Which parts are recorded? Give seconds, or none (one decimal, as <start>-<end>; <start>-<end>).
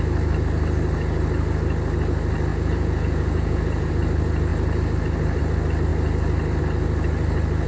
0.0-2.5; 3.9-7.7